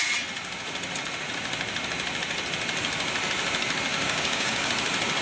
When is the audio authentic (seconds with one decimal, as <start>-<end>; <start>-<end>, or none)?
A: 0.0-3.9; 4.7-5.2